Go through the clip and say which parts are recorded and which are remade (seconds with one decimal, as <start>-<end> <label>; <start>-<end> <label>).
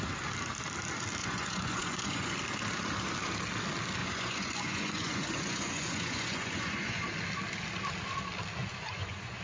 0.0-1.2 recorded; 1.2-2.3 remade; 2.3-4.0 recorded; 4.0-7.0 remade; 7.0-8.6 recorded; 8.6-9.4 remade